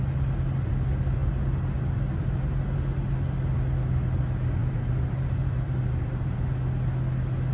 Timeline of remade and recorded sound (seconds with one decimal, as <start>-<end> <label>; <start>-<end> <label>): 0.0-4.6 recorded; 4.6-6.4 remade; 6.4-7.5 recorded